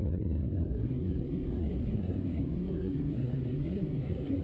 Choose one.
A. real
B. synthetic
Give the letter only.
B